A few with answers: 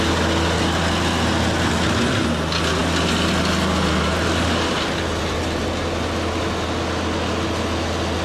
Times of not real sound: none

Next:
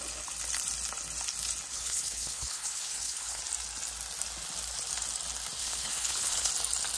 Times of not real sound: 1.7-3.4; 5.6-6.5

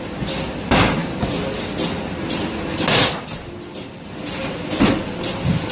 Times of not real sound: none

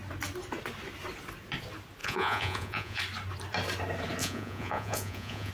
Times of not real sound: 2.0-3.0; 4.2-5.5